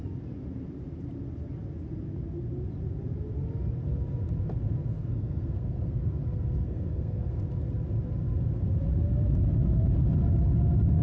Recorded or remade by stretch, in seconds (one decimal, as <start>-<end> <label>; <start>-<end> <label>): 0.0-4.9 recorded; 4.9-7.4 remade; 7.4-11.0 recorded